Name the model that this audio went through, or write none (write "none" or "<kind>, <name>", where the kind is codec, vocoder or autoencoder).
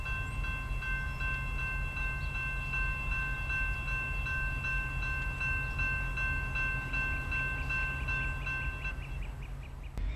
none